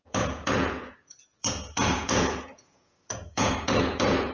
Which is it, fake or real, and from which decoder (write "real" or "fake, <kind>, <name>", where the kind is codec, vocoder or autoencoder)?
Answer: fake, vocoder, Vocos